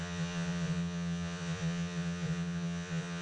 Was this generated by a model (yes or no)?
yes